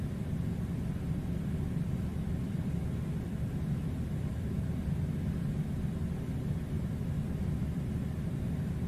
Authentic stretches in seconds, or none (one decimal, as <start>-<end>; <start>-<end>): 0.0-2.1; 4.8-8.9